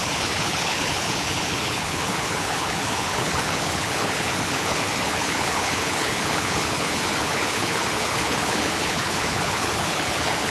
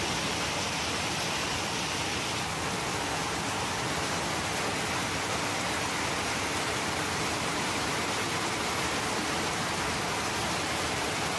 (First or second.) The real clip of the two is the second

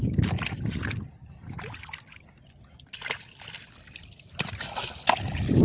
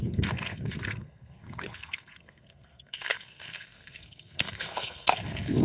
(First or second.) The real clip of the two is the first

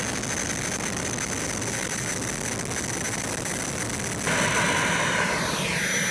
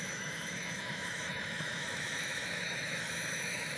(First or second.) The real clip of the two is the first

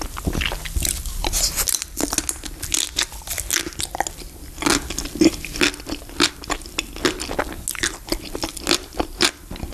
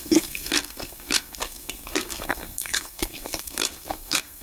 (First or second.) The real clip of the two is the first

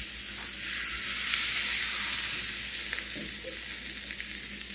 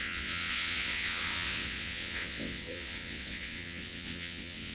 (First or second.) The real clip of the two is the first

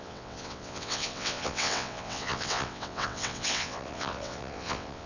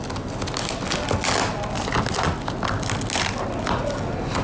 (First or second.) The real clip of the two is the second